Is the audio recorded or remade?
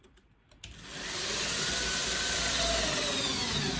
recorded